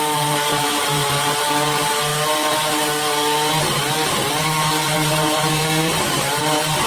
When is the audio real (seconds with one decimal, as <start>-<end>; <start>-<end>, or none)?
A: 2.1-3.6